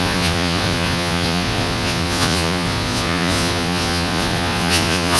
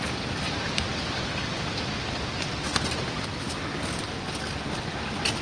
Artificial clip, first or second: first